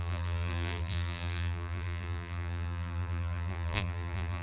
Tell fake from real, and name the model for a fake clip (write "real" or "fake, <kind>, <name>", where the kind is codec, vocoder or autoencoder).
fake, vocoder, BigVGAN v2